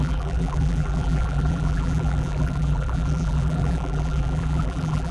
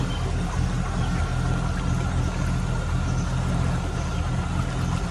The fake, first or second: first